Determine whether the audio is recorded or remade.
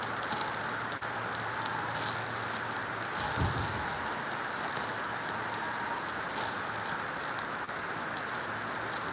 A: recorded